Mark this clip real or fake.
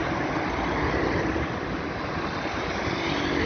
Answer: real